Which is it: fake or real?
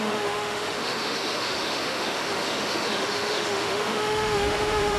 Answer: fake